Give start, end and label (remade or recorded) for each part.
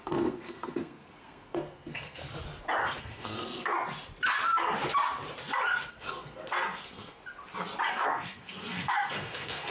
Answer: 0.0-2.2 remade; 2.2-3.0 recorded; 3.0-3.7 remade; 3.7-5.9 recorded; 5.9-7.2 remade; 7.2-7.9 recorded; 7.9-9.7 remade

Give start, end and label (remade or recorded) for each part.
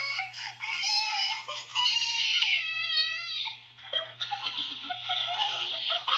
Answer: 0.0-6.2 remade